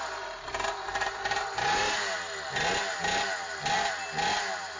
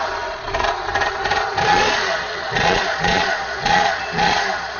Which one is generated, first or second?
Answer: second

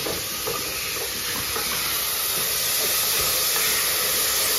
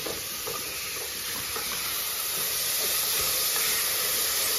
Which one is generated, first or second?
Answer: second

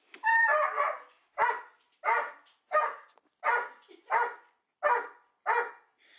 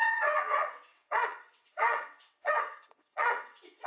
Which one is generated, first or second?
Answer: second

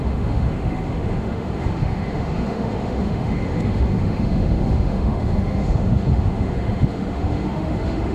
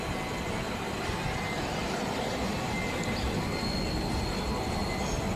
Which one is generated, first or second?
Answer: first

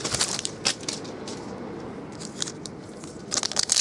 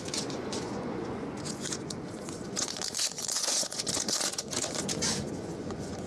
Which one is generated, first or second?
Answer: second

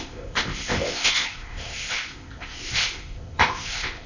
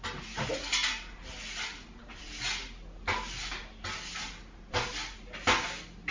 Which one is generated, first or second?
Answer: first